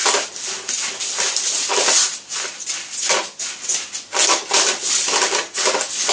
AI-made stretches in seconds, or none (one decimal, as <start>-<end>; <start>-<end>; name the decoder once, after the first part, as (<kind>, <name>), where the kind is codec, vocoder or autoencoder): 0.0-3.7 (vocoder, BigVGAN v2)